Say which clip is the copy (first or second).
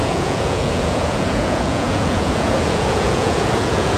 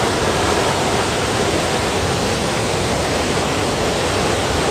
first